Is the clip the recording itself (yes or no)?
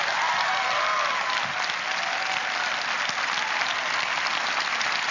yes